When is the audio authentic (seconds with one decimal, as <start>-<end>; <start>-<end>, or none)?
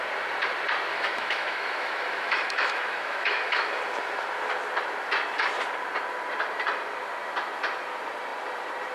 0.0-0.9; 3.8-8.9